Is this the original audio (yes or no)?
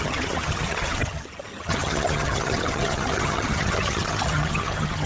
no